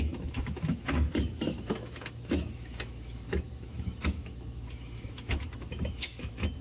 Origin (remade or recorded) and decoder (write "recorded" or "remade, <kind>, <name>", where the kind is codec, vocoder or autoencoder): remade, autoencoder, DAC-VAE